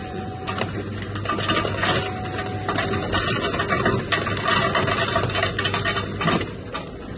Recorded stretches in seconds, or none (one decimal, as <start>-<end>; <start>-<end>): 0.6-7.2